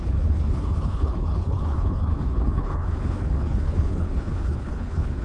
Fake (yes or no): yes